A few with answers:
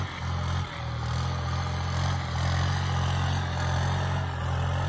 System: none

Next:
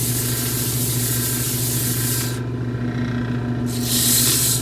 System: none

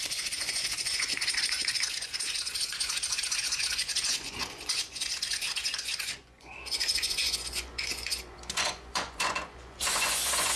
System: vocoder, Vocos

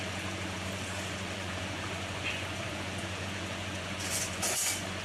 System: vocoder, Vocos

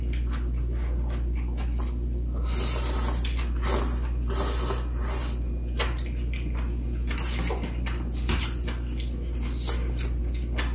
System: none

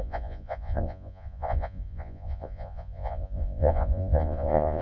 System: vocoder, Vocos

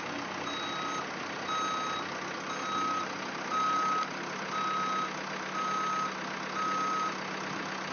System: none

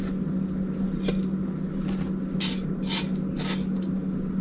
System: none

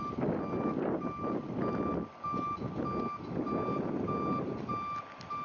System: none